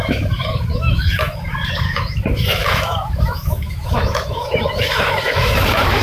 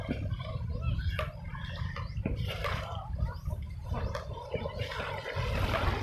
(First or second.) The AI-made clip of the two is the first